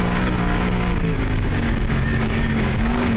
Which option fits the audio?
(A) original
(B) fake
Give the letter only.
B